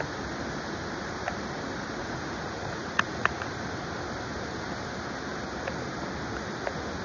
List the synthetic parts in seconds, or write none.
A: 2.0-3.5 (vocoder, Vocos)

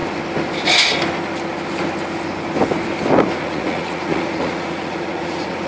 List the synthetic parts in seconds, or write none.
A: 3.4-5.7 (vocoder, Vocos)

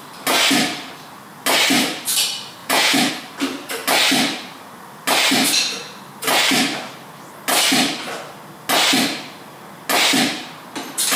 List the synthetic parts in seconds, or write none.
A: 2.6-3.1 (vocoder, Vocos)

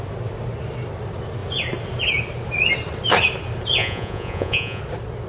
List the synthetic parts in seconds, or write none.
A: 3.8-4.8 (vocoder, Vocos)

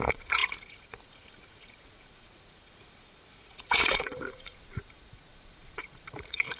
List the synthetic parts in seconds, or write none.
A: 0.0-6.6 (vocoder, Vocos)